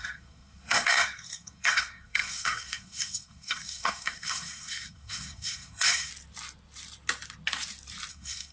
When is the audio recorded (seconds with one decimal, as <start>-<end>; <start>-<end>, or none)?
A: 6.1-8.1